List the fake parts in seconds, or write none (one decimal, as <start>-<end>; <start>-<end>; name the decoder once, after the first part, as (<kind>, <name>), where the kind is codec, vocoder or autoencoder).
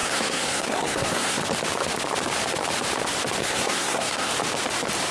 0.0-1.4 (codec, SNAC); 3.4-4.3